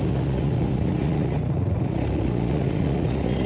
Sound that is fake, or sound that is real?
fake